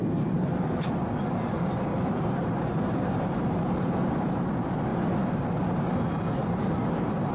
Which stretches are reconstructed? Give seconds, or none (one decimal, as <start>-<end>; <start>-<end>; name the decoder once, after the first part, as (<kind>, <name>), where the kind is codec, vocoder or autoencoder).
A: 1.9-4.4 (vocoder, BigVGAN v2); 4.9-5.5; 6.4-7.3